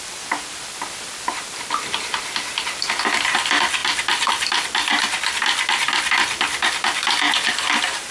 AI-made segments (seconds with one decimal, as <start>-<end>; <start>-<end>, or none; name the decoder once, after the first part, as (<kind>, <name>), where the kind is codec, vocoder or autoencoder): none